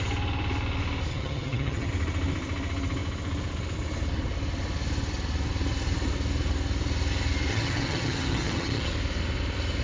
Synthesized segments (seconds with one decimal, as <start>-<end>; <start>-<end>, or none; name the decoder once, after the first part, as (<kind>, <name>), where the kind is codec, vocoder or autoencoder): 1.1-1.9 (vocoder, HiFi-GAN); 7.5-8.9